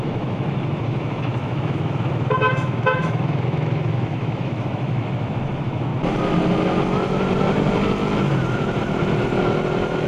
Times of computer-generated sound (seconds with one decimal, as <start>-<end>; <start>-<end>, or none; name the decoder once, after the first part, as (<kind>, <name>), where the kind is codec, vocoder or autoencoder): 0.0-5.9 (autoencoder, DAC-VAE)